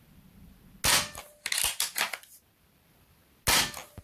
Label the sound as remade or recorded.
recorded